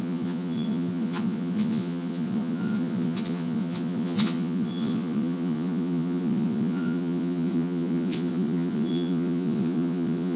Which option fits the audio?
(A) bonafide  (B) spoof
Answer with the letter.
B